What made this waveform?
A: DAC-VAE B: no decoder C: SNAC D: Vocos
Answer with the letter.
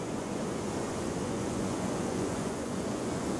D